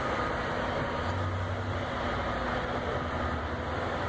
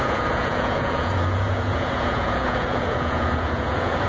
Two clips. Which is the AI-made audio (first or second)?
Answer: second